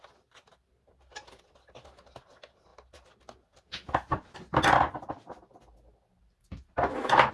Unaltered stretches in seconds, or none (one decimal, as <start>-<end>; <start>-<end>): 0.0-7.3